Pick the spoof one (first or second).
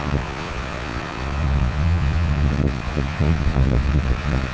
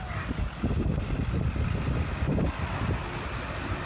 first